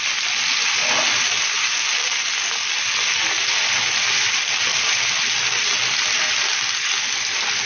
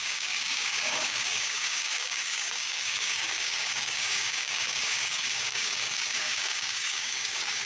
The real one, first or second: first